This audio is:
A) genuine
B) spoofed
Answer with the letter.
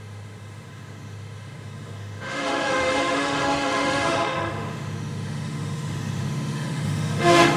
B